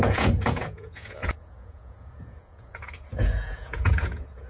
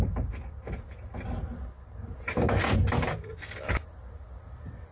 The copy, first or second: first